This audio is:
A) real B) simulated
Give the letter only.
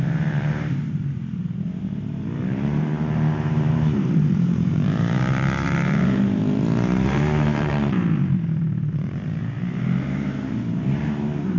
B